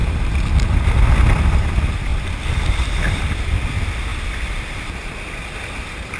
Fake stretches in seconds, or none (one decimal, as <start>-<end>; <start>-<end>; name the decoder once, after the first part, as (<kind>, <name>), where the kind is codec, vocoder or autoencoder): 2.1-3.2 (vocoder, BigVGAN v2); 4.1-5.5